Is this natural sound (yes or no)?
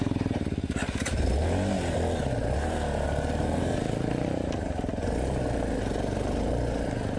yes